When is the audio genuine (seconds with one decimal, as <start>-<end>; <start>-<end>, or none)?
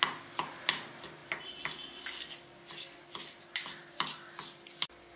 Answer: 0.0-5.2